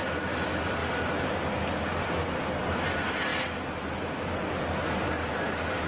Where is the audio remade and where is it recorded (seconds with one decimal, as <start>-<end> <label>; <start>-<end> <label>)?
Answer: 0.0-5.9 recorded